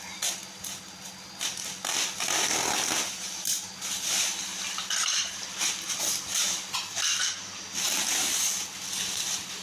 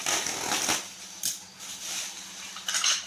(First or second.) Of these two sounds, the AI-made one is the first